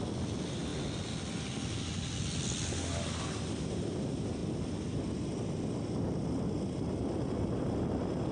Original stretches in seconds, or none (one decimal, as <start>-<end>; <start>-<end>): 0.0-8.3